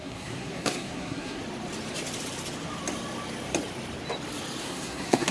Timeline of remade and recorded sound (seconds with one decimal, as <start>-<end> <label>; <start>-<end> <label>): 0.0-1.4 remade; 1.4-4.6 recorded; 4.6-5.3 remade